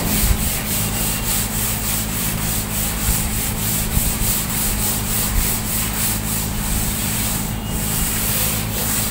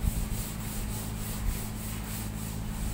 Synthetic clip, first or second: first